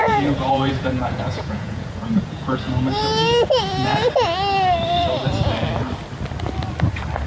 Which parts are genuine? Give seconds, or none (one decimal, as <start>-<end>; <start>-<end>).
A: 2.6-7.3